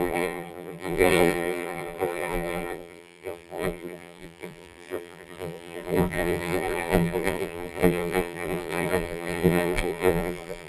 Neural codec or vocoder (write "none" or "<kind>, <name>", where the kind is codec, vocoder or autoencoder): vocoder, BigVGAN v2